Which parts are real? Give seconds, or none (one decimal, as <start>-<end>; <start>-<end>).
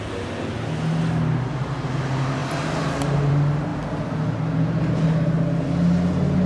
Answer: 0.0-6.5